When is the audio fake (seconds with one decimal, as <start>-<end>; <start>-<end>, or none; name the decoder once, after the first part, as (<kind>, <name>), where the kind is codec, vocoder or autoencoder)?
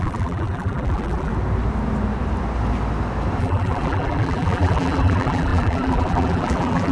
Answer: 0.0-1.3 (vocoder, BigVGAN v2); 3.4-6.9